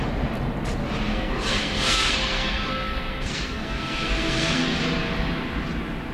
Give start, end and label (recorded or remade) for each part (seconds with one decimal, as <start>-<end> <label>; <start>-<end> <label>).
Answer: 0.0-1.1 recorded; 1.1-4.8 remade; 4.8-6.1 recorded